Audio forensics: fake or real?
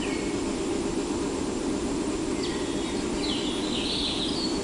real